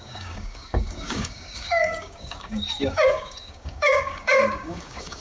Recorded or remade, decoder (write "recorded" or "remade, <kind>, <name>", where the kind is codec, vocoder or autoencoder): remade, codec, DAC